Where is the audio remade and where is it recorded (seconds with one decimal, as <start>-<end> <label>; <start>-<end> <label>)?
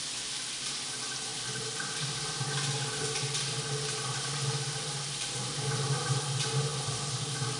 0.0-7.6 recorded